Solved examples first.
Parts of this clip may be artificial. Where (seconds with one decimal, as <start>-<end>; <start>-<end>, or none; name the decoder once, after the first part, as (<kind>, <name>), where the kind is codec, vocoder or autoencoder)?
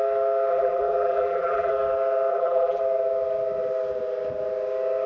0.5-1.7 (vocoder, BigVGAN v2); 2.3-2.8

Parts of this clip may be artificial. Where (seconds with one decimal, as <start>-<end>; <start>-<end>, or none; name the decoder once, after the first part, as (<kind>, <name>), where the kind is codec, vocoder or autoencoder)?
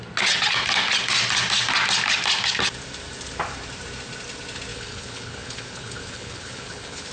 4.7-7.1 (codec, HILCodec)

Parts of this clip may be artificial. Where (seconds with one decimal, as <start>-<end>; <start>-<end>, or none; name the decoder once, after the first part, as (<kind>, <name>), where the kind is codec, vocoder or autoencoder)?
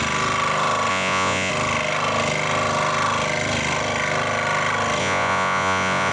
0.9-1.5 (vocoder, Vocos); 5.0-6.1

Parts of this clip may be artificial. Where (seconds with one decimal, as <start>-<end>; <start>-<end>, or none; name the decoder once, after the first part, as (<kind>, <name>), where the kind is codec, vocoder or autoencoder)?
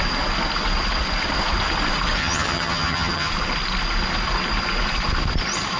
2.2-3.3 (vocoder, HiFi-GAN)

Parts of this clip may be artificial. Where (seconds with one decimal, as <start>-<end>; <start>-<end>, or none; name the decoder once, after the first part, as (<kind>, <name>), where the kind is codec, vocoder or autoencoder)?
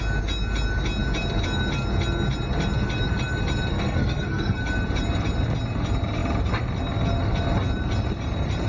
3.7-4.6 (codec, SNAC)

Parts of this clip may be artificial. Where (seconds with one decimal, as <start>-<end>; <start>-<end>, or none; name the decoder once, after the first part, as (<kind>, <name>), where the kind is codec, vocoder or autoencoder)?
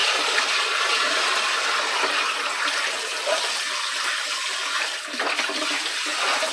none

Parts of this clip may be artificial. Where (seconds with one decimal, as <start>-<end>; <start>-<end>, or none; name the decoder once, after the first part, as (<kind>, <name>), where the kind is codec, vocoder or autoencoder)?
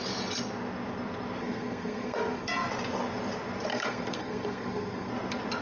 1.4-2.5 (codec, SNAC); 3.7-5.1